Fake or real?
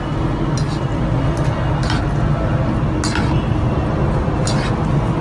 real